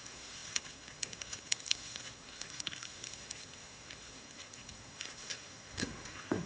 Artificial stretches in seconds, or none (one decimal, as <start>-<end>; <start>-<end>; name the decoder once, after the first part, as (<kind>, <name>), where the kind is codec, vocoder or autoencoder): 0.0-6.5 (codec, SNAC)